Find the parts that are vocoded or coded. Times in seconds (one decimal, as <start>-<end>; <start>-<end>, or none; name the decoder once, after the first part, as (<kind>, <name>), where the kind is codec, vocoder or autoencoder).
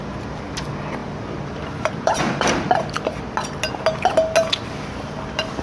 1.0-3.2 (vocoder, BigVGAN v2)